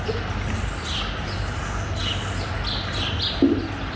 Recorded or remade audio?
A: recorded